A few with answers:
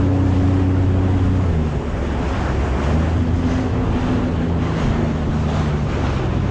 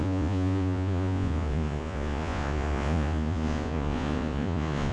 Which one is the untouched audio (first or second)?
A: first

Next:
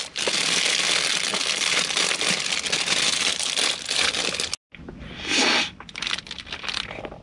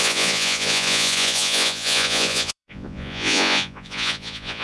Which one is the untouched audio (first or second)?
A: first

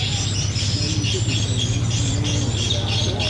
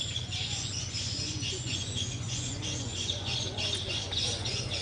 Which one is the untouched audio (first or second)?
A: first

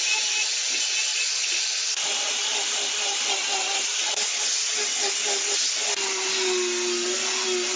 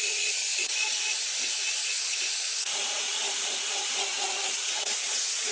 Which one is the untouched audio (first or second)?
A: first